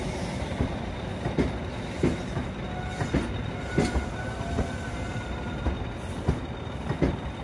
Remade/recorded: recorded